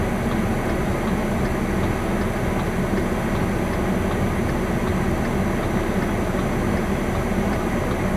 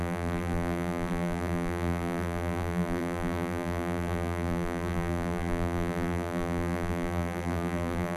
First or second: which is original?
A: first